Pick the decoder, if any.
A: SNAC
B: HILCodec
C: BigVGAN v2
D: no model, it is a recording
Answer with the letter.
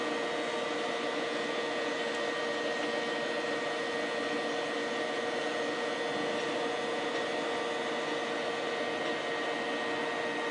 D